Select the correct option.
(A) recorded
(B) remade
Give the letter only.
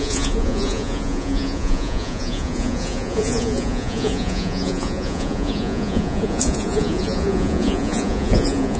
B